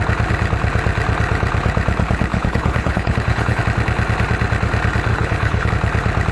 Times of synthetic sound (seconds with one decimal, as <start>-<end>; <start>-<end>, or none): 2.3-3.6; 5.1-5.7